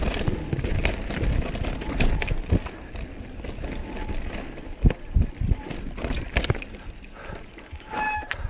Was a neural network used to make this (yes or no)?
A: no